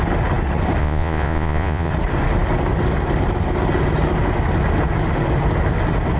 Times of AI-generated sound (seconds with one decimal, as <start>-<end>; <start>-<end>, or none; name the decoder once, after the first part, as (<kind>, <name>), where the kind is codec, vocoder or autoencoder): 0.8-1.9 (vocoder, Vocos)